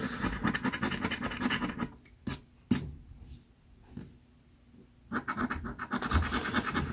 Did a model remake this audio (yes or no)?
no